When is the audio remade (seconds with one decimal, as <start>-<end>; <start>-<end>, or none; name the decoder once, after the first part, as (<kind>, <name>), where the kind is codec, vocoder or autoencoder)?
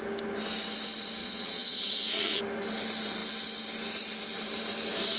1.2-2.4 (vocoder, Vocos)